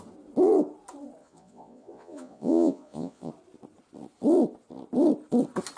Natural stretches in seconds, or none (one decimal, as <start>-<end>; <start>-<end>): 0.0-1.2; 3.3-5.8